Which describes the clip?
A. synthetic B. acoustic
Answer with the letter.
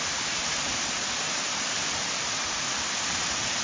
B